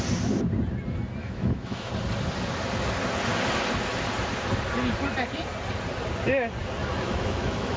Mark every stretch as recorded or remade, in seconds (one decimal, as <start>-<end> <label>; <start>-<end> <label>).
0.0-1.2 recorded; 1.2-1.9 remade; 1.9-6.8 recorded; 6.8-7.8 remade